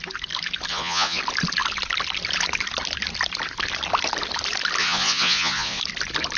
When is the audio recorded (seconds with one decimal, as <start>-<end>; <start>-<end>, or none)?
0.0-0.7; 1.2-4.8; 5.8-6.4